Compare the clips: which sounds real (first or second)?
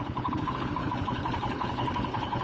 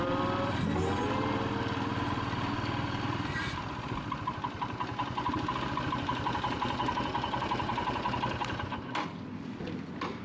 second